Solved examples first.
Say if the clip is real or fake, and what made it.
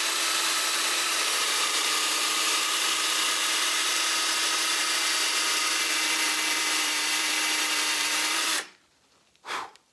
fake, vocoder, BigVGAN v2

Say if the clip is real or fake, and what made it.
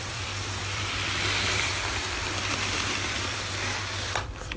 fake, vocoder, BigVGAN v2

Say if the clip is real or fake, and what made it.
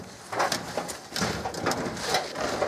real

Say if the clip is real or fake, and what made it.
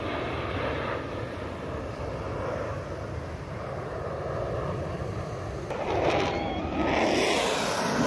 fake, vocoder, BigVGAN v2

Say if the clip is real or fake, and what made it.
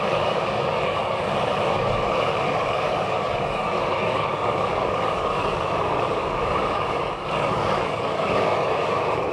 fake, codec, DAC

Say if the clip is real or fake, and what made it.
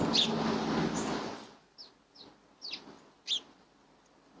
real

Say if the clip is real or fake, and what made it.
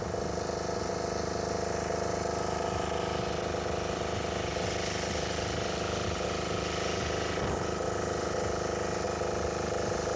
real